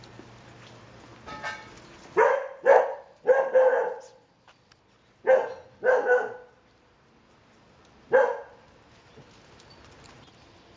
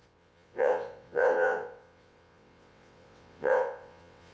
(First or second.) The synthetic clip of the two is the second